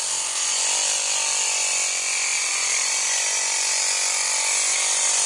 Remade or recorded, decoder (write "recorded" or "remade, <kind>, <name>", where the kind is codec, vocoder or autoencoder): recorded